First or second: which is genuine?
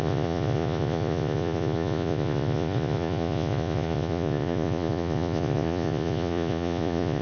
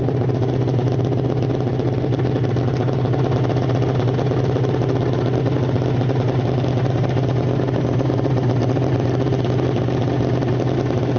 second